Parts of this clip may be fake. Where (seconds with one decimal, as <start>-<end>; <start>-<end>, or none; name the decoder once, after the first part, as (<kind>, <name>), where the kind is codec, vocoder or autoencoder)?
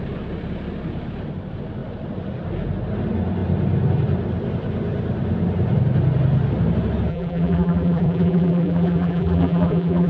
7.1-10.1 (vocoder, BigVGAN v2)